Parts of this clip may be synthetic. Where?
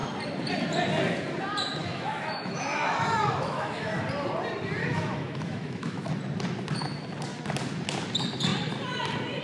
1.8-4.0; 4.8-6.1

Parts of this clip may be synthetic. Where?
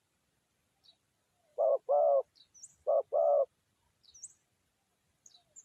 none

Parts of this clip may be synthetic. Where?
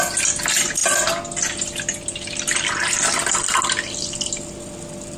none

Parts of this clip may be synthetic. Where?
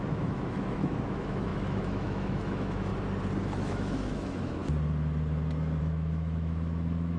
0.0-2.9; 3.4-4.6; 5.8-7.2